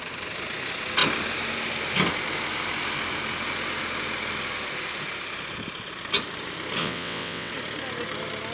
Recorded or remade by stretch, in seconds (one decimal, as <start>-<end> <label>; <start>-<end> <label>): 0.0-6.8 recorded; 6.8-7.5 remade; 7.5-8.5 recorded